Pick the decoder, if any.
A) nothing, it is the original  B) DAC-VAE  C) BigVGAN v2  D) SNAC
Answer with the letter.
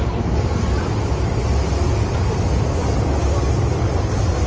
A